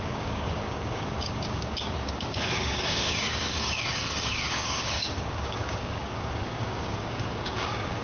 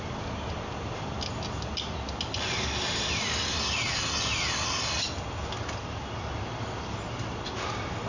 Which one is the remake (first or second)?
first